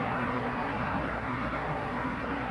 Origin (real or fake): fake